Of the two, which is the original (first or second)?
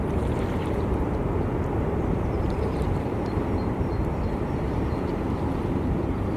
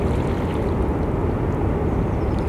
second